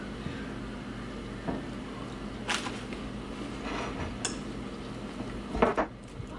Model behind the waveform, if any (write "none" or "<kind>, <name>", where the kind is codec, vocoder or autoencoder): none